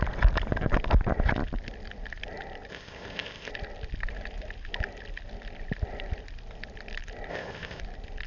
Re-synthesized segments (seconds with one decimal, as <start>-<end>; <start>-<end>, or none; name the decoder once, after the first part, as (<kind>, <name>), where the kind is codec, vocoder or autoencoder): 2.7-3.5 (codec, ZipCodec); 7.3-7.8